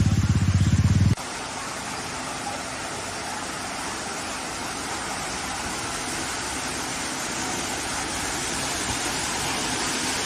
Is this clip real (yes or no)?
yes